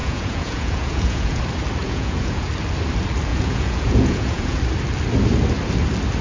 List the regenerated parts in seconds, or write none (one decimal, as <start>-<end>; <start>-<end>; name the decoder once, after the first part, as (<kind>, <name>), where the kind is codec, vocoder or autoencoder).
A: 0.0-1.4 (vocoder, Vocos); 1.8-2.5; 3.3-4.6

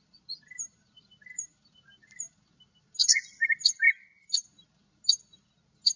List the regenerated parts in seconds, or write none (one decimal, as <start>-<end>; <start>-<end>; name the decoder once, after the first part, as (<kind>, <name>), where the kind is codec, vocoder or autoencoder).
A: none

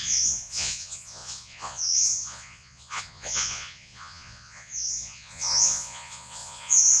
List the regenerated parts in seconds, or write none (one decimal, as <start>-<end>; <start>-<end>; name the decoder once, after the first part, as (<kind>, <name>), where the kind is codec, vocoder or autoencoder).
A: 0.0-7.0 (vocoder, Vocos)

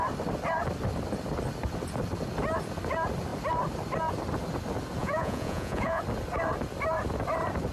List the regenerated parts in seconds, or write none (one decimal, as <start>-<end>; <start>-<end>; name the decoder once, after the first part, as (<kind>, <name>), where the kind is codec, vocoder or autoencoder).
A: 5.0-6.0 (vocoder, Vocos)

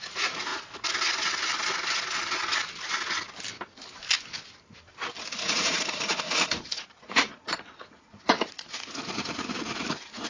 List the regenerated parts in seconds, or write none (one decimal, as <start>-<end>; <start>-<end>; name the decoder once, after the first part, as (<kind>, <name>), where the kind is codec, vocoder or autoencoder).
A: 0.0-0.5 (vocoder, Vocos); 5.4-10.3

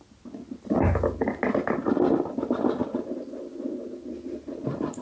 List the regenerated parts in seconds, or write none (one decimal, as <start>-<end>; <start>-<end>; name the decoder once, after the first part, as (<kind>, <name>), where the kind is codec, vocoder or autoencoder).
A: none